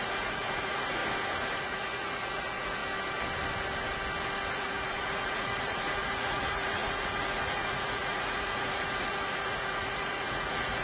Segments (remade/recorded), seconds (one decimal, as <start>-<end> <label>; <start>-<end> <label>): 0.0-1.0 remade; 1.0-1.6 recorded; 1.6-2.8 remade; 2.8-4.5 recorded; 4.5-10.8 remade